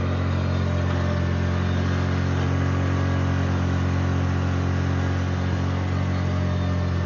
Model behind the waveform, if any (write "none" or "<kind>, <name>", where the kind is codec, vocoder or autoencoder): none